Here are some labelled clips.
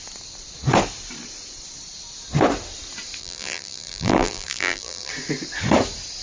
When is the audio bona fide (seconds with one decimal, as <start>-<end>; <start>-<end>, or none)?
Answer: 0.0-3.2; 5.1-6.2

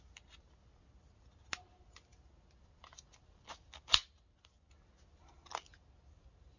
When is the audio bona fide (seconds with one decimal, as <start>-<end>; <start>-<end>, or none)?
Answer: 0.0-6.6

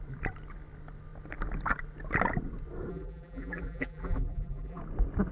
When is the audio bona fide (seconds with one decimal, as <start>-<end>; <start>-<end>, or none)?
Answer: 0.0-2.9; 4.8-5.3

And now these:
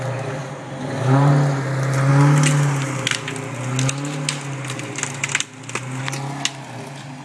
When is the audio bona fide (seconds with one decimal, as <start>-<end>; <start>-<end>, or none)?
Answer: 0.0-0.4; 1.3-7.2

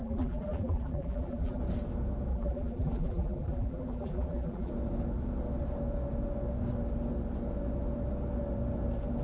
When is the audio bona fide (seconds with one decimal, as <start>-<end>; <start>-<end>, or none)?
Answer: 1.6-2.3; 4.7-9.2

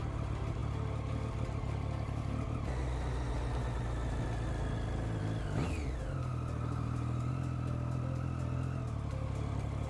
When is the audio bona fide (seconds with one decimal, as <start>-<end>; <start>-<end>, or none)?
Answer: 0.0-9.9